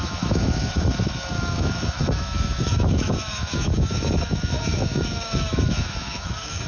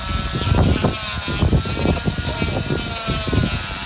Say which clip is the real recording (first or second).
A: second